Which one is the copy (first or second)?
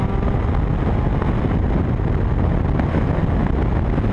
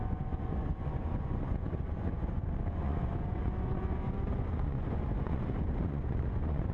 second